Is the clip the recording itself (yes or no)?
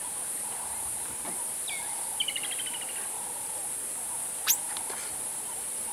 yes